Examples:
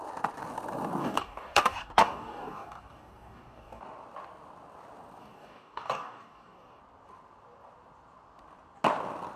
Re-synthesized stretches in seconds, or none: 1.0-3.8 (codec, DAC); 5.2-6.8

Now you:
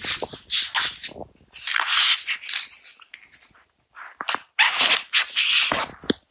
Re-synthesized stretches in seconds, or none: none